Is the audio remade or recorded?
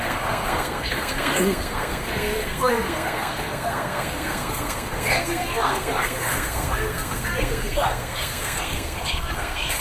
remade